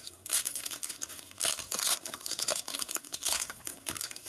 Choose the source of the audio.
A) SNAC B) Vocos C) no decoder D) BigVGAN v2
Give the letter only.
A